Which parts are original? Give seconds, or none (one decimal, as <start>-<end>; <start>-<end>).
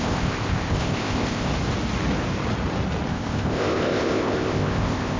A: 1.5-3.1